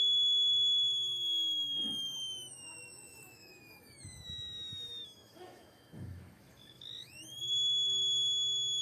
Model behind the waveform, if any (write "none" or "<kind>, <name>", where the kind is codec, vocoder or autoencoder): autoencoder, DAC-VAE